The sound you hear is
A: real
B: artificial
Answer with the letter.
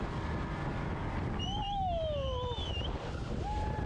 A